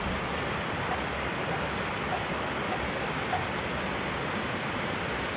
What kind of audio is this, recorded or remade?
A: recorded